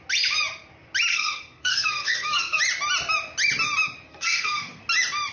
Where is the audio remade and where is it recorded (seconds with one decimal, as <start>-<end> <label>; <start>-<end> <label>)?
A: 0.0-1.1 recorded; 1.1-2.6 remade; 2.6-4.1 recorded; 4.1-4.8 remade; 4.8-5.3 recorded